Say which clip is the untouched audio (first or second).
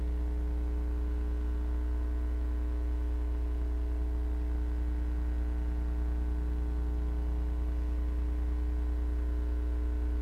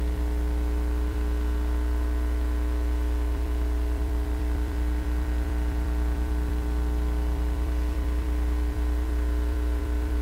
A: first